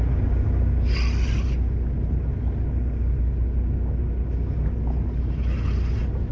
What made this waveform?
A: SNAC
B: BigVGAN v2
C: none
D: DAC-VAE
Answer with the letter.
C